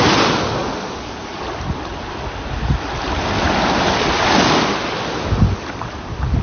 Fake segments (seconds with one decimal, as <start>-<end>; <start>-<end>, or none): none